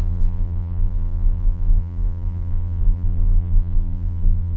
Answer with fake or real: fake